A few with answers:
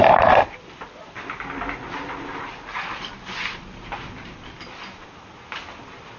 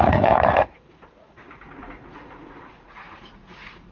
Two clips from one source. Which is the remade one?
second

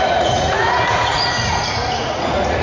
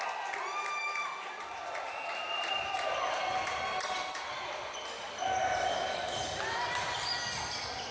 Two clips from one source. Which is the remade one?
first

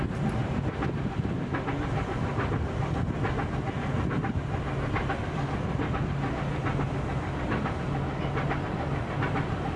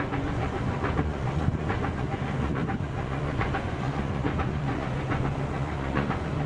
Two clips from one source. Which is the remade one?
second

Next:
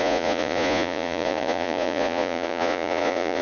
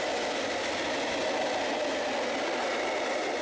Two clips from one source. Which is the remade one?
first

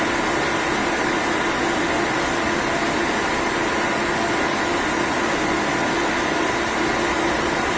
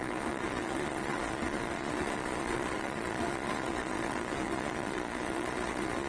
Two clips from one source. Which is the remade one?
second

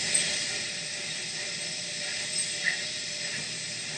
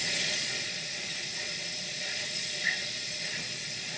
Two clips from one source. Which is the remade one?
second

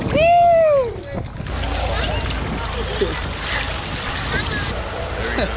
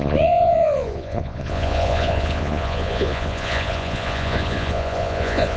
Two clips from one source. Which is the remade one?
second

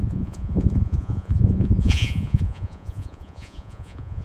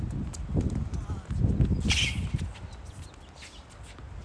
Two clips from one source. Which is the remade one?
first